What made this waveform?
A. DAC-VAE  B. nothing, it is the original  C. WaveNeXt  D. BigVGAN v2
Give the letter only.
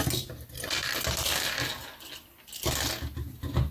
B